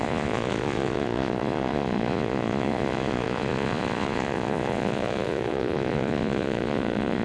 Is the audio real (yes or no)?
no